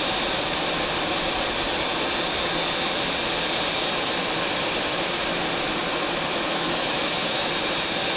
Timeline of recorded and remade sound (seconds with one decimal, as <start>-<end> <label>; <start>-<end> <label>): 0.0-6.3 recorded; 6.3-7.5 remade; 7.5-8.2 recorded